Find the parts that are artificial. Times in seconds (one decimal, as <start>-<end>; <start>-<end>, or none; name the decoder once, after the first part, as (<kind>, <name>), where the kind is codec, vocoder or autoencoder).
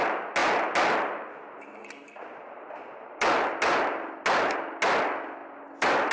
none